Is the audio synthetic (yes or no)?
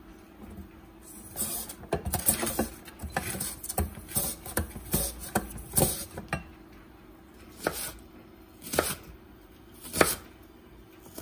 no